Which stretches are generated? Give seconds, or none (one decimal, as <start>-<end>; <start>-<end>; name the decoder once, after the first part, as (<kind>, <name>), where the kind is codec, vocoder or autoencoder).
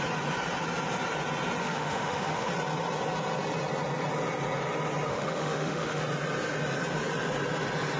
1.6-2.5 (autoencoder, DAC-VAE); 5.1-6.0